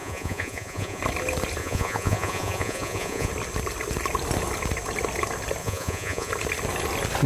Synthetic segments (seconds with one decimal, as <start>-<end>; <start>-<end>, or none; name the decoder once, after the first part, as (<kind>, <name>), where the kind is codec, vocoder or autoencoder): 0.0-1.0 (vocoder, Vocos); 1.6-3.3; 5.6-6.3